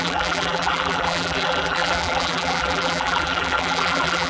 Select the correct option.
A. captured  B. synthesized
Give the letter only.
B